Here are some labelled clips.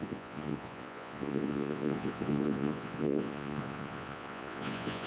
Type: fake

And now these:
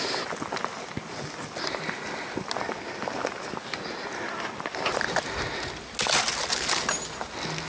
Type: real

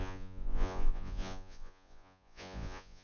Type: fake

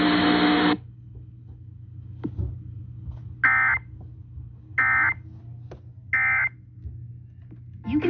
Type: real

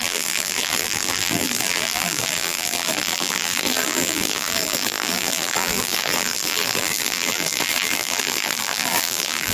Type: fake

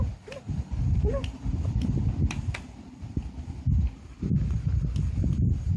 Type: real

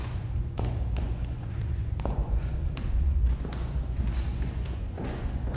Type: fake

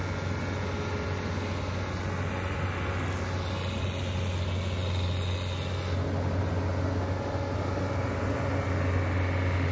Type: real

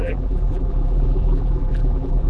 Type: fake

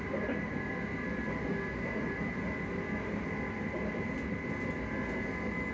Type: real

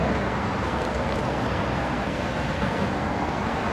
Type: fake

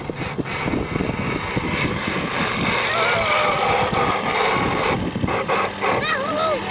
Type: real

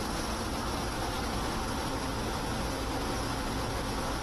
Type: real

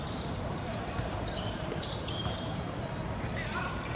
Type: fake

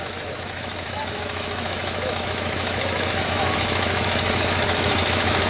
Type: fake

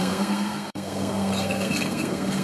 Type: fake